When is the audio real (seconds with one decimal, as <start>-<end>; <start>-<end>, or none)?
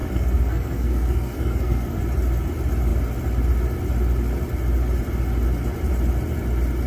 2.0-6.9